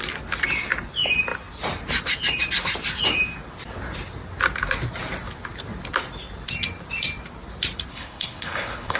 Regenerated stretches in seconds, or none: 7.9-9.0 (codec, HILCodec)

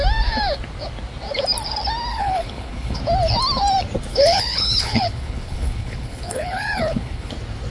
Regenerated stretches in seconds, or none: 2.1-3.0 (codec, HILCodec); 4.1-7.3

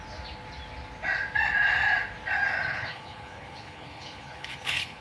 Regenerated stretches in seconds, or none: 2.7-5.0 (codec, HILCodec)

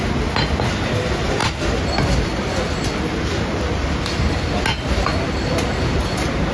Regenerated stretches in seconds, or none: none

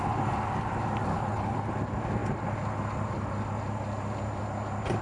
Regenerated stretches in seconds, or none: 1.1-1.6 (codec, HILCodec)

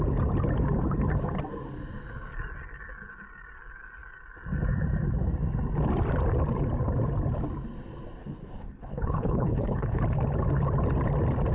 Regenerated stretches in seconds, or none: 8.2-10.0 (codec, HILCodec)

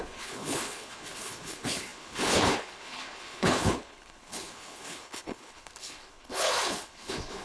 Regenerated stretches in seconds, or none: 0.0-7.4 (codec, HILCodec)